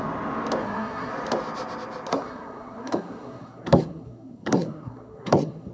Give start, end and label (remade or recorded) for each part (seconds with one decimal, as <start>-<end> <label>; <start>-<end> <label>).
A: 0.0-0.6 recorded; 0.6-1.1 remade; 1.1-2.1 recorded; 2.1-5.7 remade